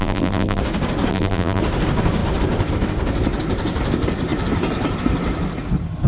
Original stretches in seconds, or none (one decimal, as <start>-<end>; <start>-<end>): 0.6-1.1; 1.6-6.1